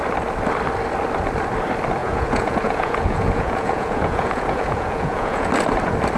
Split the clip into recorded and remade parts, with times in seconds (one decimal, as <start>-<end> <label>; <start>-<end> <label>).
0.0-2.0 recorded; 2.0-5.5 remade; 5.5-6.2 recorded